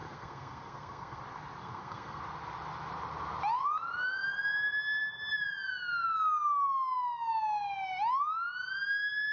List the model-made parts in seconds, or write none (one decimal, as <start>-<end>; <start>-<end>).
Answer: 0.0-1.2; 1.6-2.2